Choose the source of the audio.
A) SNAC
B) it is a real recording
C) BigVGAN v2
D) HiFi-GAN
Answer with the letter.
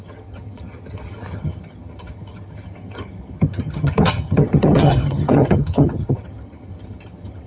D